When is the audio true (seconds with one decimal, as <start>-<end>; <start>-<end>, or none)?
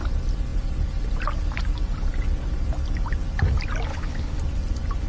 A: 0.0-3.9; 4.4-5.1